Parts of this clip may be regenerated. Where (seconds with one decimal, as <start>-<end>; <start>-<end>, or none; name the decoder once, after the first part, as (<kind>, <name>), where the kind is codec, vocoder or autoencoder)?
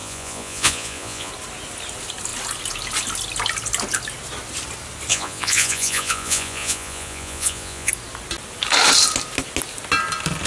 0.0-1.3 (vocoder, Vocos); 5.1-7.9